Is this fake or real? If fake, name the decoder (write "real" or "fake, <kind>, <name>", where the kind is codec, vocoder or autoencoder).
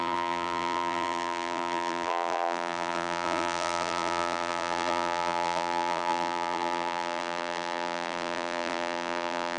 fake, vocoder, BigVGAN v2